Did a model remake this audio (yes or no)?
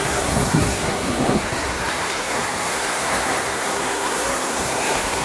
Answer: yes